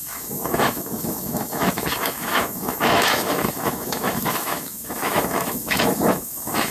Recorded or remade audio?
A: remade